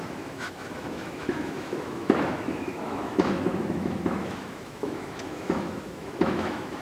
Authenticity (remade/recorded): remade